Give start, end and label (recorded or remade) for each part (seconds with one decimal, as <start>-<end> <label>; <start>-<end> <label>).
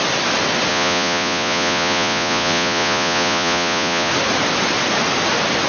0.0-0.7 recorded; 0.7-4.1 remade; 4.1-5.7 recorded